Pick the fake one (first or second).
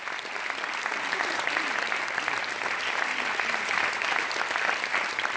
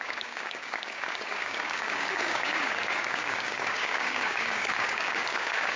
second